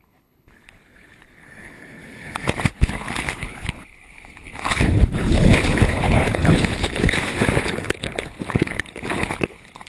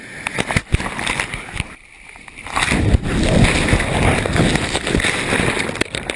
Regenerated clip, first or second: first